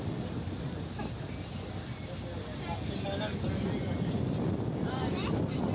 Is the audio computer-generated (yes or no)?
no